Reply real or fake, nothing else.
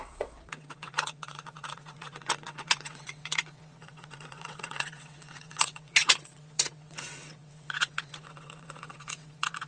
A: fake